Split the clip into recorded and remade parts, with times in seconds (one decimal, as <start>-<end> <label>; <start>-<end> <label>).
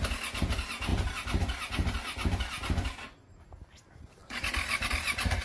0.0-5.4 recorded